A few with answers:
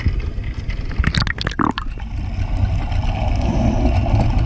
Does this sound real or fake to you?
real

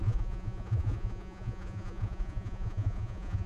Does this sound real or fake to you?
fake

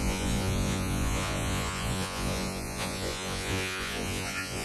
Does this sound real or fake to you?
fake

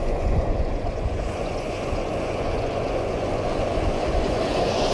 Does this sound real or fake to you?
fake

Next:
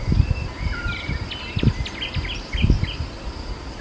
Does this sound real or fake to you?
real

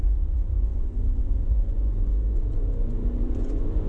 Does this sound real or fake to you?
fake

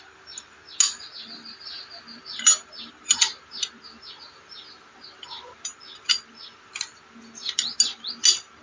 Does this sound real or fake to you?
real